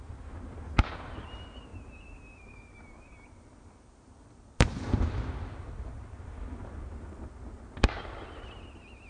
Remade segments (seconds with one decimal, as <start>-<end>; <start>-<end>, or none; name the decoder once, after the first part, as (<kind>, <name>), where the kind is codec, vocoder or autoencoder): 1.7-6.8 (vocoder, BigVGAN v2)